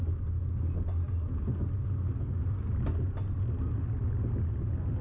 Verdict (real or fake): real